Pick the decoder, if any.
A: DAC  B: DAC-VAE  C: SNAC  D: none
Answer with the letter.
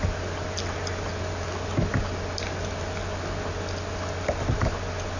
D